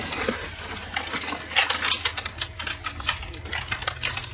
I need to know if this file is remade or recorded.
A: recorded